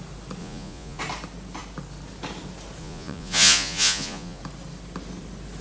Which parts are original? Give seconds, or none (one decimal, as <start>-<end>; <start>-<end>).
0.0-0.4; 1.0-2.8; 4.4-5.6